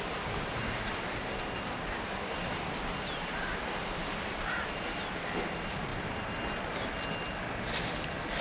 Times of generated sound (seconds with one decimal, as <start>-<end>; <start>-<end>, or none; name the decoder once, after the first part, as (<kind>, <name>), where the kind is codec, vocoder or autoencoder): none